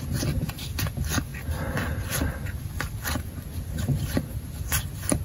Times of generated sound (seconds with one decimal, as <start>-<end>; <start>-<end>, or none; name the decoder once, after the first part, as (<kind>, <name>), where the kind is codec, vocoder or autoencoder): none